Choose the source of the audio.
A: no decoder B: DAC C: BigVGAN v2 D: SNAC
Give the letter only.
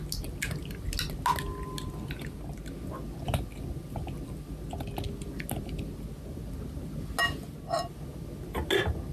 A